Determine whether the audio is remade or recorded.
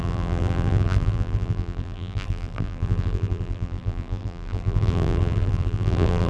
remade